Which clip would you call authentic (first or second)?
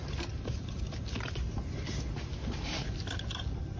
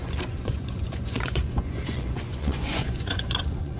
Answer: first